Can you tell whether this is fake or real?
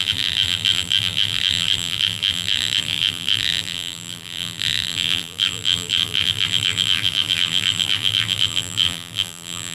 fake